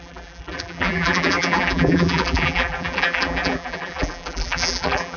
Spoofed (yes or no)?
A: yes